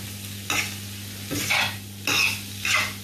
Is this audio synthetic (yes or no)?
no